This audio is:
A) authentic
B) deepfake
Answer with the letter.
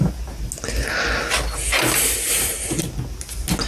A